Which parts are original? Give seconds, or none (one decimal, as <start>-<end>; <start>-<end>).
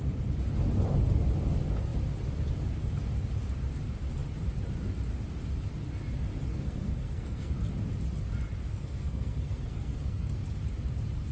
0.0-6.5; 7.5-8.7; 10.4-11.3